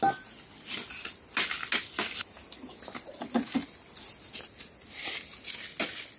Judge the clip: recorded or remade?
recorded